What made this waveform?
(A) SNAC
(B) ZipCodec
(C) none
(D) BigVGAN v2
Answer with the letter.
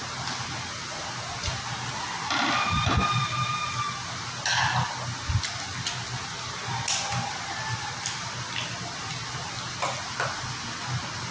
C